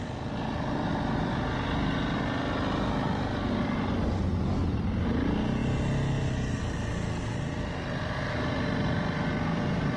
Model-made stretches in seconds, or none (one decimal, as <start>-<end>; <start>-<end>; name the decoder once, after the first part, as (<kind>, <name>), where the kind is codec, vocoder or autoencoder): none